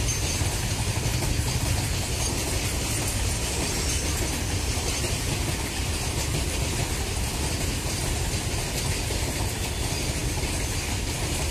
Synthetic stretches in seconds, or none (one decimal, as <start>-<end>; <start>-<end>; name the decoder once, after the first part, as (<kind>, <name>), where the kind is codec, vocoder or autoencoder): none